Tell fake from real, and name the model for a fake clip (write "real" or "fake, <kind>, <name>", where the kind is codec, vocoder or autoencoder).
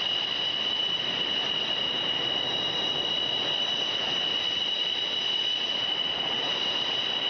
real